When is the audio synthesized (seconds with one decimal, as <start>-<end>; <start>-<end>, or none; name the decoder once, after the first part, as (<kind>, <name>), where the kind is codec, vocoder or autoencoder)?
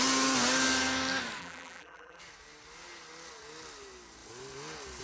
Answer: 1.4-2.2 (vocoder, BigVGAN v2)